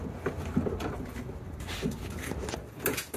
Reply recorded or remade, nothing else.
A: recorded